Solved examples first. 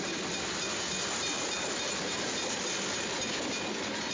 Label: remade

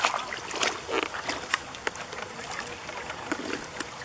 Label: recorded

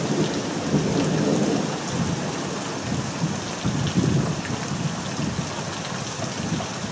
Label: recorded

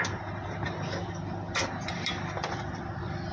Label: remade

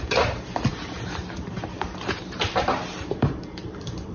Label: remade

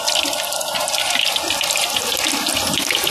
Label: recorded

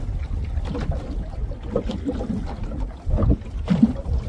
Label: recorded